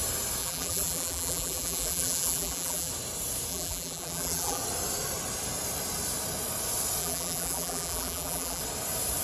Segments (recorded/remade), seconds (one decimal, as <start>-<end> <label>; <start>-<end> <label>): 0.0-0.4 recorded; 0.4-2.9 remade; 2.9-3.5 recorded; 3.5-4.6 remade; 4.6-7.0 recorded; 7.0-8.6 remade; 8.6-9.2 recorded